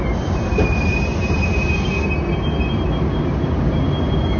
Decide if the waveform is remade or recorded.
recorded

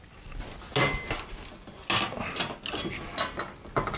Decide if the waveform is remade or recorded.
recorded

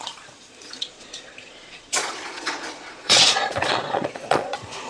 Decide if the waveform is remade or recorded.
remade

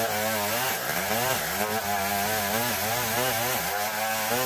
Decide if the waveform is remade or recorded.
recorded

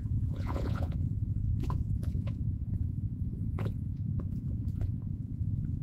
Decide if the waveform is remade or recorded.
remade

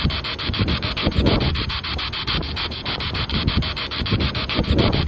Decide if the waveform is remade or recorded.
remade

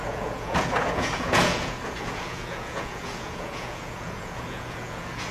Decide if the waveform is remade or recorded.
remade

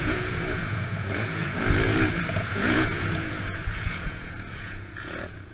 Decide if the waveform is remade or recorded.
remade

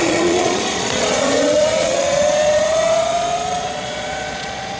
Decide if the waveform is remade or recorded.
remade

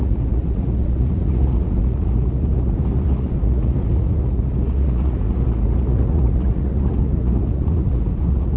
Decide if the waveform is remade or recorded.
remade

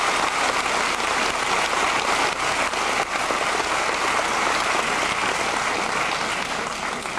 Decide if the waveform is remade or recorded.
recorded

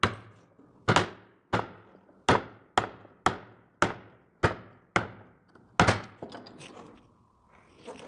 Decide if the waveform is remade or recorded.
recorded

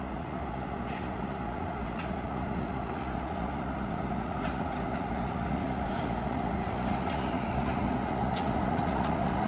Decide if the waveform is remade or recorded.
remade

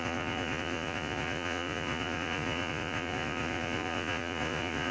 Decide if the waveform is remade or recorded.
remade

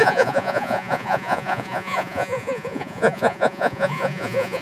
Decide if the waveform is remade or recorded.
remade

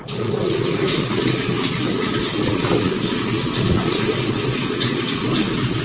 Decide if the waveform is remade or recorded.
remade